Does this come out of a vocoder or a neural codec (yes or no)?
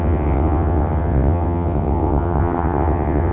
yes